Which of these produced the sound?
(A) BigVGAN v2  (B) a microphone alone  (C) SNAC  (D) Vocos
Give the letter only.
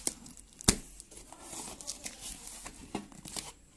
B